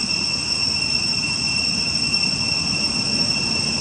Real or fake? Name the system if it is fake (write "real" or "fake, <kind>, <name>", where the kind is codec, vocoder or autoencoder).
real